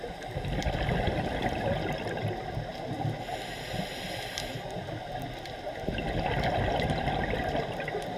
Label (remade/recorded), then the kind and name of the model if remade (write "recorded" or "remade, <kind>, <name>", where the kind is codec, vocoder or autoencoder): recorded